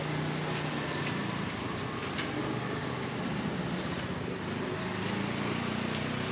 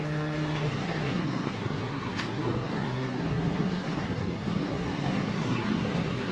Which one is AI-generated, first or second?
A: second